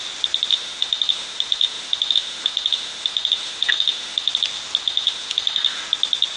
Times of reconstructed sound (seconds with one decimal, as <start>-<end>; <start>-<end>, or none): 0.5-4.3; 4.8-5.8